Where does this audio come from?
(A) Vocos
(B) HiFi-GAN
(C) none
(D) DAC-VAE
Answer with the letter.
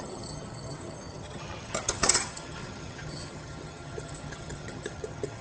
B